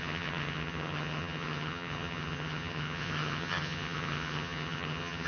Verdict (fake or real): fake